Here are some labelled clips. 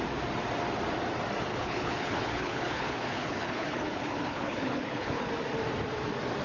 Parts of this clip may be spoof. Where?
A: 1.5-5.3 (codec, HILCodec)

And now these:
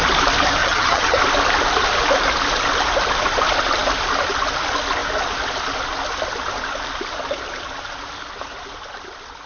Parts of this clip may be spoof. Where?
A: 0.6-1.2 (vocoder, HiFi-GAN)